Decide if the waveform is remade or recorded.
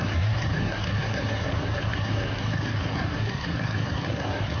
remade